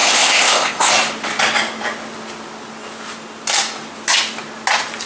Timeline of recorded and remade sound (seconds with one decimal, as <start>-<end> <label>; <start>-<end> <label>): 0.0-0.9 remade; 0.9-5.1 recorded